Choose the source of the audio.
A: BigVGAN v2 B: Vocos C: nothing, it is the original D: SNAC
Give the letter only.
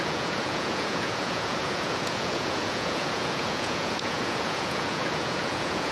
B